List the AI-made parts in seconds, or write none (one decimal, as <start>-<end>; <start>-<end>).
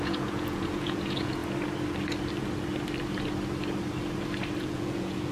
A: 0.0-1.4; 4.6-5.3